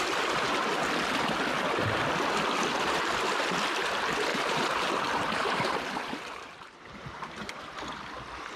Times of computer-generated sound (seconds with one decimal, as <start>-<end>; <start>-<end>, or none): 4.3-7.6